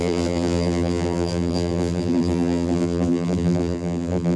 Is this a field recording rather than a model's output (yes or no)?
no